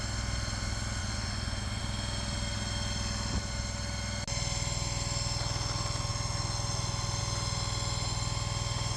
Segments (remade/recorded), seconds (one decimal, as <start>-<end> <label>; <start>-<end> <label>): 0.0-1.0 recorded; 1.0-1.8 remade; 1.8-9.0 recorded